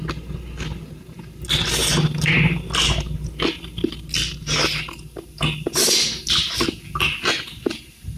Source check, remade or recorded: recorded